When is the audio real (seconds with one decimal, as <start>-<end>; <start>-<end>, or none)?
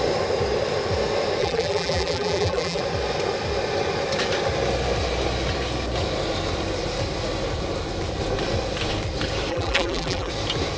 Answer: 0.0-1.4; 2.8-9.5; 10.3-10.8